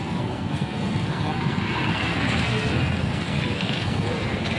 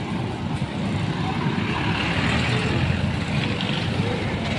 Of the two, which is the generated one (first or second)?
first